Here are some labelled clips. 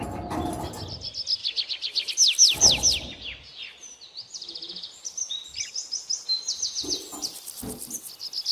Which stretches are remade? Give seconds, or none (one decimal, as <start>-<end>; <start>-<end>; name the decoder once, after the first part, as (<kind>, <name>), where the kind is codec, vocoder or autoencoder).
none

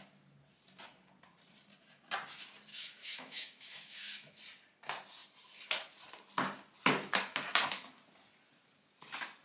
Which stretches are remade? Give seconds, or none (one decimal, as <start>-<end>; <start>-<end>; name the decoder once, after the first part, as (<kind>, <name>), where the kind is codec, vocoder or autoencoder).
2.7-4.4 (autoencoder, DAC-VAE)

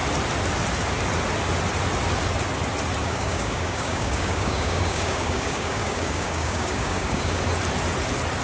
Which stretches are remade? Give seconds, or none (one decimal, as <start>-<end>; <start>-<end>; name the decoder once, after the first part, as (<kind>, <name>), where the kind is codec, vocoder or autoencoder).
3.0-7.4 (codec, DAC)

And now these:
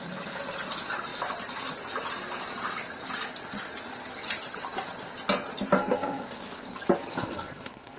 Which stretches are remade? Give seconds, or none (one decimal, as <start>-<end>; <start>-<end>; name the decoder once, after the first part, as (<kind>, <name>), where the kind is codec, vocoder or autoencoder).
5.8-6.4 (codec, SNAC); 7.1-8.0

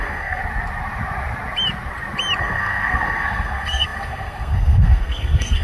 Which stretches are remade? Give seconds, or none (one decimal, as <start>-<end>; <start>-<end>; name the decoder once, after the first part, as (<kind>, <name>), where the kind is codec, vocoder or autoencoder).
0.0-0.4 (codec, SNAC); 2.4-5.6